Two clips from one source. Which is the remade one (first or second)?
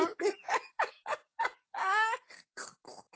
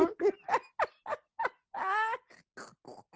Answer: first